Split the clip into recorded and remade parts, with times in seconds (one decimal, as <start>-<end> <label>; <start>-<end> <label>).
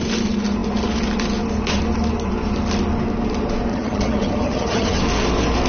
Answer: 0.0-3.7 recorded; 3.7-5.0 remade; 5.0-5.7 recorded